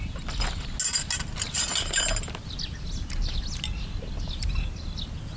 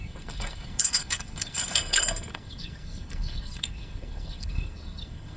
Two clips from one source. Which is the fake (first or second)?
second